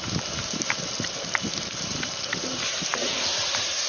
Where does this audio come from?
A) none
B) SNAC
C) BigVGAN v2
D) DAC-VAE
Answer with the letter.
C